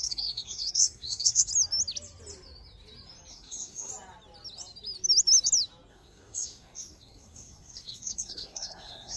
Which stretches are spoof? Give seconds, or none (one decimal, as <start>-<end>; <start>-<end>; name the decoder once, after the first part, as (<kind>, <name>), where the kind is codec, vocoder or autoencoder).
0.0-1.5 (codec, SNAC); 3.3-3.9; 5.9-9.2